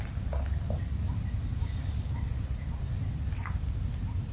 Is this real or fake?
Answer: fake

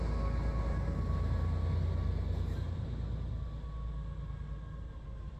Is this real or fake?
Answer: real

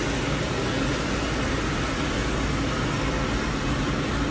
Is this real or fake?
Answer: real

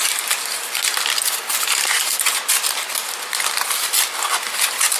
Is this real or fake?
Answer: real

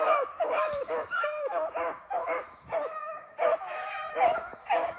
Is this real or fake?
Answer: fake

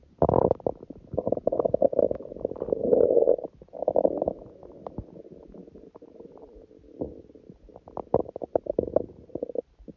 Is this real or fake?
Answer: real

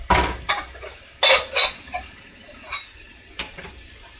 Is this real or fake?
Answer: real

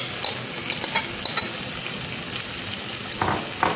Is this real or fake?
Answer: real